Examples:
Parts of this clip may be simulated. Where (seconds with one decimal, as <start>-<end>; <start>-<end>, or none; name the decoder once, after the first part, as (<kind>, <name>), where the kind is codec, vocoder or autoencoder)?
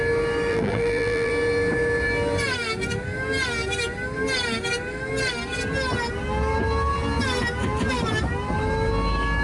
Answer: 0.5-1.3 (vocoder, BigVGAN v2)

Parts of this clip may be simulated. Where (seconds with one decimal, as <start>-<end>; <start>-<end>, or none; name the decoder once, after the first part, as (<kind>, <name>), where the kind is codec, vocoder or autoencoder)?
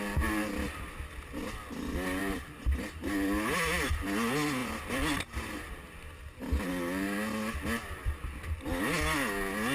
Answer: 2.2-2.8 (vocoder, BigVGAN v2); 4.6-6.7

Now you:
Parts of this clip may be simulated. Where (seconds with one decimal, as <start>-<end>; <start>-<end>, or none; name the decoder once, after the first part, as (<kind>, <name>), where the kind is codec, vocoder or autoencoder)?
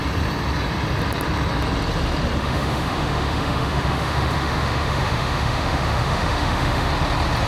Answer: 2.4-6.9 (autoencoder, DAC-VAE)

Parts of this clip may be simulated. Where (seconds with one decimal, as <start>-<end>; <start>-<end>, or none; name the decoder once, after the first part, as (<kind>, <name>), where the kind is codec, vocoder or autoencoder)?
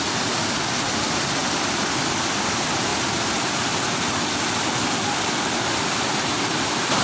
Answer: none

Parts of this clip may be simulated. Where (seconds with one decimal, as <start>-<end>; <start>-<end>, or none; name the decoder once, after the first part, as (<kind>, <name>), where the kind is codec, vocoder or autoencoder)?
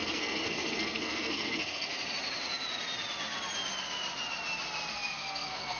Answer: 0.0-1.9 (codec, SNAC); 4.9-5.8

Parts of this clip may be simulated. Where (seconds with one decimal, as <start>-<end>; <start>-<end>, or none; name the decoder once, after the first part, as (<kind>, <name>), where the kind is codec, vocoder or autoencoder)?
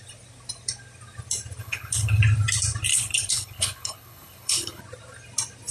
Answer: 1.6-2.2 (codec, HILCodec); 2.9-4.8